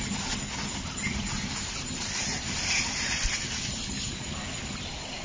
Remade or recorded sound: recorded